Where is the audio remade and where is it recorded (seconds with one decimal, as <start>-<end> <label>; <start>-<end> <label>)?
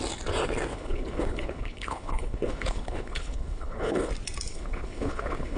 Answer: 0.0-0.7 recorded; 0.7-4.1 remade; 4.1-4.5 recorded; 4.5-5.6 remade